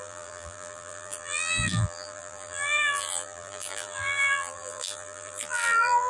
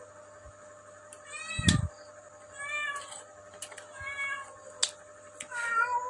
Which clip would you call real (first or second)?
second